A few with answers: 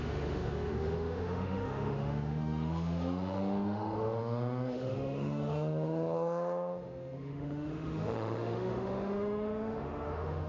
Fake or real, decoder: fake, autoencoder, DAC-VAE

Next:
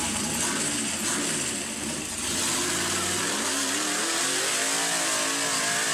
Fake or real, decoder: real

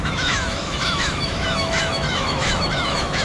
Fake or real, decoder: fake, autoencoder, DAC-VAE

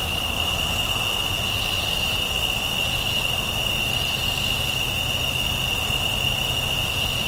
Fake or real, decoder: real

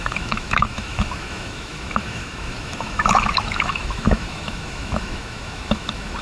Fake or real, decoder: fake, autoencoder, DAC-VAE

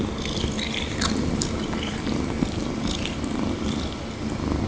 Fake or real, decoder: real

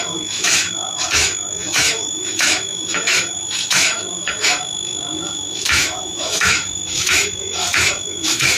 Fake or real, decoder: fake, autoencoder, DAC-VAE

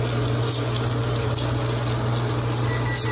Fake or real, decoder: real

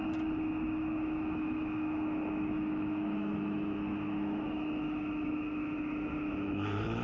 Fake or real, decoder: fake, autoencoder, DAC-VAE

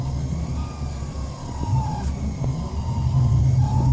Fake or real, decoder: real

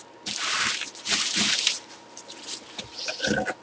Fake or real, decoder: real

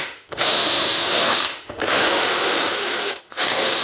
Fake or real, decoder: fake, autoencoder, DAC-VAE